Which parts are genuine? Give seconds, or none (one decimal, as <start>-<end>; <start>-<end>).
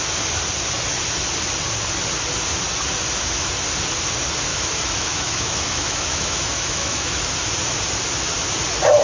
0.0-4.5; 7.2-9.0